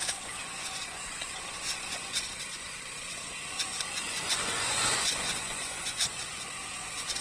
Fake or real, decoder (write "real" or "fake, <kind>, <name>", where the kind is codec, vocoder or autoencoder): fake, vocoder, Vocos